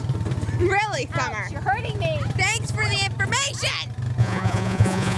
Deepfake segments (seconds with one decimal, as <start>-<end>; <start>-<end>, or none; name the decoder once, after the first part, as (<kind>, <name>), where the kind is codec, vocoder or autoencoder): 4.2-5.2 (vocoder, Vocos)